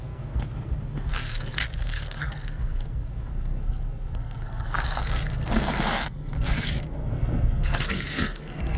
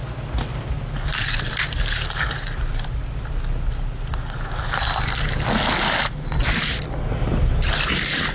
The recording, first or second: second